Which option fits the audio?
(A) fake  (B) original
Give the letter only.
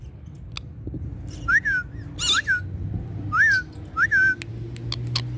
B